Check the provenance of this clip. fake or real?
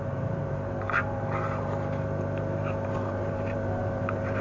fake